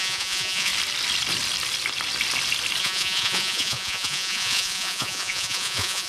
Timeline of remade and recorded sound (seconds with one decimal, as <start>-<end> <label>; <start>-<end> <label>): 0.0-0.7 remade; 0.7-2.8 recorded; 2.8-6.1 remade